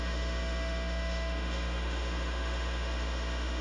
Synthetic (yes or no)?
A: yes